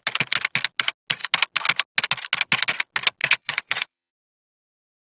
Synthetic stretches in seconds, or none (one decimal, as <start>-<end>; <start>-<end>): 3.2-4.1